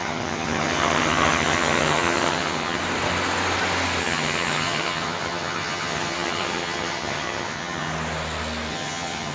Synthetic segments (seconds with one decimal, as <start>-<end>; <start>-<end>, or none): 0.0-2.8; 4.0-7.9; 8.7-9.3